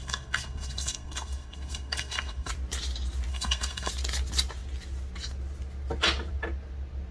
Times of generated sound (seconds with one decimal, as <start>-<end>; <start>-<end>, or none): 0.0-2.5; 3.3-3.9